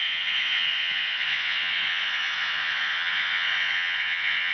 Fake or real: fake